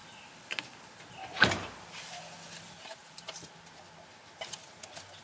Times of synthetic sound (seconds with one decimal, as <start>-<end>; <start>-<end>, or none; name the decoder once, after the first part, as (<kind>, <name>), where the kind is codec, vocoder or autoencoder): 3.0-3.5 (vocoder, BigVGAN v2)